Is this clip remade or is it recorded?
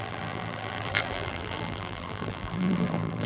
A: remade